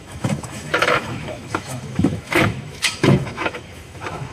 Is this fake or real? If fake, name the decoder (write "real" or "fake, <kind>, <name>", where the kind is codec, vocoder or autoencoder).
fake, autoencoder, DAC-VAE